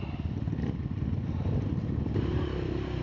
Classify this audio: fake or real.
real